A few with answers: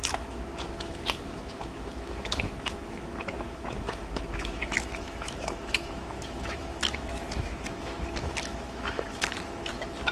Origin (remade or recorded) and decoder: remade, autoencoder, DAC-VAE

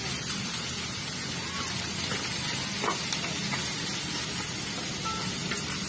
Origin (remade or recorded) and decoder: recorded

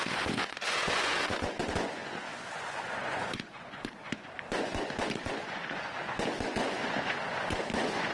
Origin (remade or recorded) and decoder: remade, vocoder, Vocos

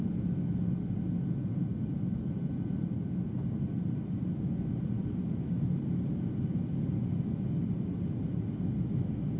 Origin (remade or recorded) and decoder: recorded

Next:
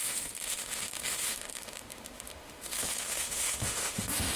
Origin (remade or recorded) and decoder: remade, autoencoder, DAC-VAE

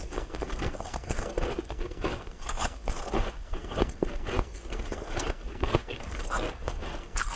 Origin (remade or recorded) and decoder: remade, codec, SNAC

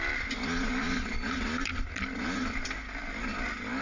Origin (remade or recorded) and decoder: recorded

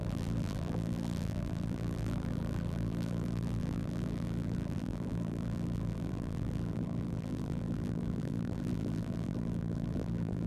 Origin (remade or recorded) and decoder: remade, vocoder, BigVGAN v2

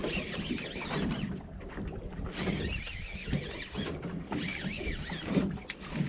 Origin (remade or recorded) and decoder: recorded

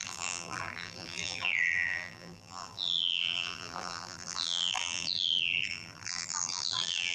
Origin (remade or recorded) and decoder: remade, vocoder, BigVGAN v2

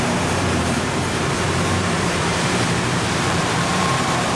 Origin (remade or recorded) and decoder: remade, vocoder, BigVGAN v2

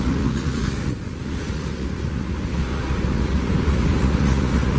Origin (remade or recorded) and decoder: remade, vocoder, Vocos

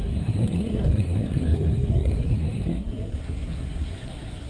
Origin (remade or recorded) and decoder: remade, codec, SNAC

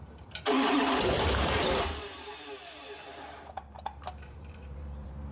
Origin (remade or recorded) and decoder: remade, vocoder, BigVGAN v2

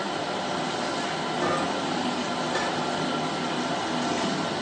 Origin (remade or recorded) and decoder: recorded